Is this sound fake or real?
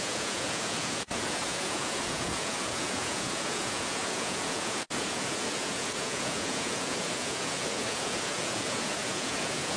fake